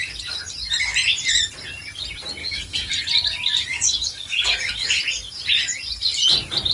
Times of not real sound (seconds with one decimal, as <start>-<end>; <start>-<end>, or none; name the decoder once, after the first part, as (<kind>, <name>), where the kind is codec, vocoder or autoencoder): 2.4-2.9 (codec, DAC); 3.7-5.0